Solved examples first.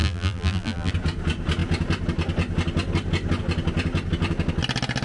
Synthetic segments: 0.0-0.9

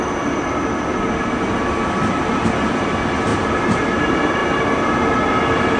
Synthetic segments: 3.3-3.9